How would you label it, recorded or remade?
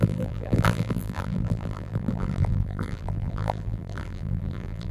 remade